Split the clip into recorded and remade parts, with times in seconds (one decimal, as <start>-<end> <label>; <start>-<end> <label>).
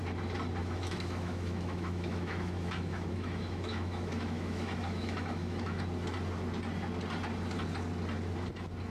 0.0-0.6 recorded; 0.6-5.8 remade; 5.8-8.9 recorded